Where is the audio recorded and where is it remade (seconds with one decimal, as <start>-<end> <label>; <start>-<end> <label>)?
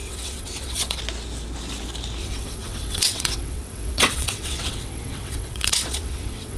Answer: 0.0-1.0 remade; 1.0-2.2 recorded; 2.2-6.6 remade